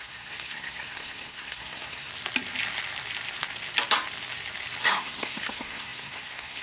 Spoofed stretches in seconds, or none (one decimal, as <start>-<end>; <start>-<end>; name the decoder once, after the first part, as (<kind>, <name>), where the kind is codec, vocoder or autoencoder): 0.0-2.1 (codec, SNAC); 4.9-6.6